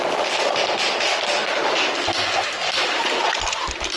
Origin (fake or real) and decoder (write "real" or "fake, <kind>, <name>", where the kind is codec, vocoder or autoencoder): real